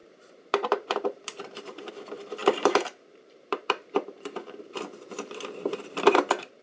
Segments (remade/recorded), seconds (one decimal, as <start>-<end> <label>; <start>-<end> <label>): 0.0-1.9 remade; 1.9-2.4 recorded; 2.4-6.6 remade